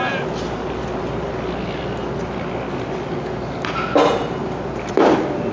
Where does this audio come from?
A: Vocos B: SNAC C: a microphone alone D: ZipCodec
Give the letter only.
C